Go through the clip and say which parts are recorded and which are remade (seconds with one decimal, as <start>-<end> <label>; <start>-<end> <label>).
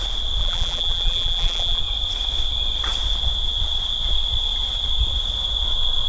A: 0.0-0.4 recorded; 0.4-1.8 remade; 1.8-6.1 recorded